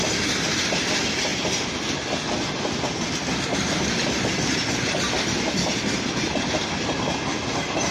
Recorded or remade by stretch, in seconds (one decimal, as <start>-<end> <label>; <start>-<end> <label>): 0.0-1.3 recorded; 1.3-2.1 remade; 2.1-7.9 recorded

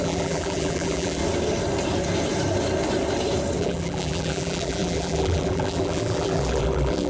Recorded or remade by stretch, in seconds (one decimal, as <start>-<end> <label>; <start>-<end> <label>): 0.0-1.2 remade; 1.2-3.6 recorded; 3.6-7.1 remade

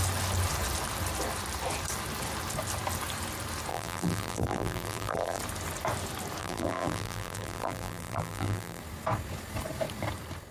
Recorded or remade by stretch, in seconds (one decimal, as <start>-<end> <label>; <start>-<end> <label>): 0.0-3.7 recorded; 3.7-5.4 remade; 5.4-6.4 recorded; 6.4-8.8 remade; 8.8-10.5 recorded

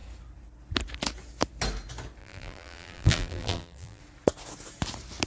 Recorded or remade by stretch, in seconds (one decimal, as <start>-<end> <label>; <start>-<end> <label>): 0.0-2.2 recorded; 2.2-4.0 remade; 4.0-5.3 recorded